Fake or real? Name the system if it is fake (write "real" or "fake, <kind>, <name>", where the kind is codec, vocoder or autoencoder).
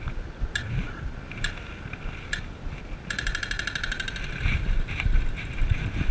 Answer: fake, vocoder, BigVGAN v2